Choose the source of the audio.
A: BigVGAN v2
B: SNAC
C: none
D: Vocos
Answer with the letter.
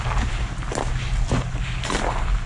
C